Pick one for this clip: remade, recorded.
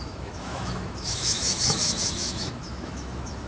remade